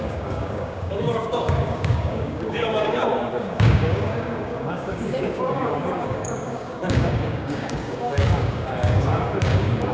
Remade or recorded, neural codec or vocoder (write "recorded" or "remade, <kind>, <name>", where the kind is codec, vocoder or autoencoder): remade, codec, DAC